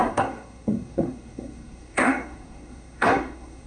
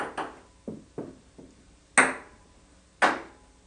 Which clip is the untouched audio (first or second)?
second